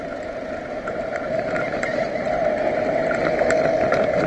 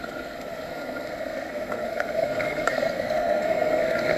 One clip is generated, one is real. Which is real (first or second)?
first